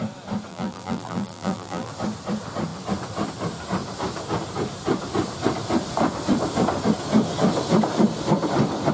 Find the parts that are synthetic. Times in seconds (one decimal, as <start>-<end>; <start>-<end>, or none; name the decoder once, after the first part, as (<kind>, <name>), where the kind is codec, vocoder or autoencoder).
0.5-1.9 (vocoder, BigVGAN v2)